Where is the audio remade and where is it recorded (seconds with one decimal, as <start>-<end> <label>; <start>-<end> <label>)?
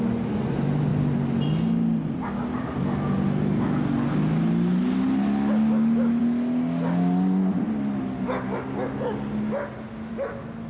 0.0-10.7 recorded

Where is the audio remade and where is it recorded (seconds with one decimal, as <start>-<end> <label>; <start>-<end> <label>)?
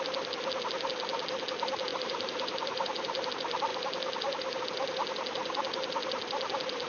0.0-1.9 recorded; 1.9-3.3 remade; 3.3-3.7 recorded; 3.7-4.6 remade; 4.6-6.9 recorded